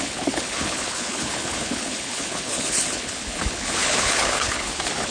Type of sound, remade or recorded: remade